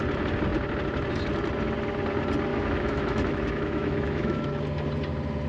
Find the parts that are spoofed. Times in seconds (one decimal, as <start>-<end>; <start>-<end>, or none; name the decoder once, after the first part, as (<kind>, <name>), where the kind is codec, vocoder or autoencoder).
2.5-4.5 (autoencoder, DAC-VAE)